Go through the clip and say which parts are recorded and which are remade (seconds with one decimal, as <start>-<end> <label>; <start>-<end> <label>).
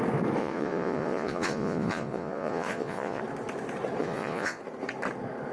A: 0.0-0.4 recorded; 0.4-3.2 remade; 3.2-4.0 recorded; 4.0-4.6 remade; 4.6-5.5 recorded